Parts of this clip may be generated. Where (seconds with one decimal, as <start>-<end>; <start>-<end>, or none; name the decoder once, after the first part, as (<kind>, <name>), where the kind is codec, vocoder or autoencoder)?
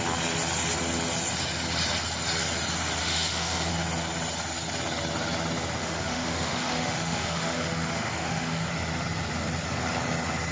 3.0-3.7 (autoencoder, DAC-VAE); 5.8-8.7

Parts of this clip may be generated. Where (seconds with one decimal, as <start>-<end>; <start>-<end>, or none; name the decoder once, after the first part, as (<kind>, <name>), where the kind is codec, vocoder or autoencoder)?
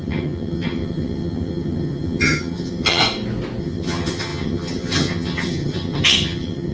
0.0-3.0 (vocoder, HiFi-GAN); 3.6-6.7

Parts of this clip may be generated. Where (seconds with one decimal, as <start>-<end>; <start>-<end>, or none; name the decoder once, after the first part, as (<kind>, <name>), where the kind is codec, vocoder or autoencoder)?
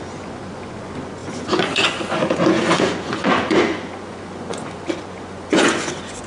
0.0-6.3 (vocoder, Vocos)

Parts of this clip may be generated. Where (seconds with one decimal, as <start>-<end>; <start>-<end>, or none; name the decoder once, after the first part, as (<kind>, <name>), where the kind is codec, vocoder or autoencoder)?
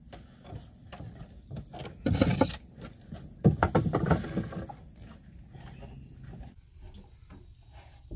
none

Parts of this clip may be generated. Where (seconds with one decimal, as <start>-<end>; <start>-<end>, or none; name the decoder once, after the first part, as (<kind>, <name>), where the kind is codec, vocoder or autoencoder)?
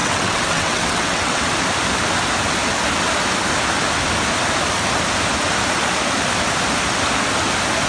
0.0-1.4 (vocoder, WaveNeXt)